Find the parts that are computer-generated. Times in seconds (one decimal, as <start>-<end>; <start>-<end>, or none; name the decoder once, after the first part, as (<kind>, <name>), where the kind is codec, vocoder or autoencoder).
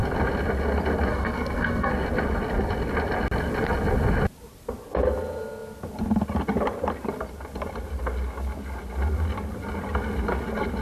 1.1-1.9 (codec, SNAC)